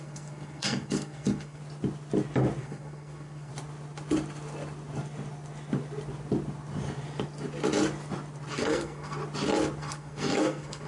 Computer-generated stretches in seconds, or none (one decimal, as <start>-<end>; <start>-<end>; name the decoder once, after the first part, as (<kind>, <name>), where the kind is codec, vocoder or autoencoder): 0.0-1.6 (codec, SNAC); 2.6-3.5; 8.5-9.2; 9.8-10.9